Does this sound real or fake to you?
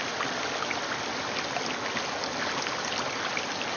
real